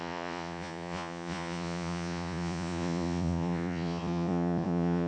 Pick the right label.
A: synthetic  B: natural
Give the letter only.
A